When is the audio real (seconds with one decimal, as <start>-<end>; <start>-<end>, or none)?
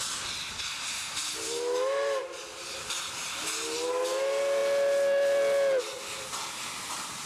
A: 0.0-7.3